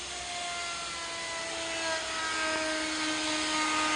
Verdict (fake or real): real